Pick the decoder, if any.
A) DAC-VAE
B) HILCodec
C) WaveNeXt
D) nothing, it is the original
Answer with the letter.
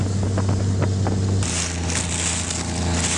D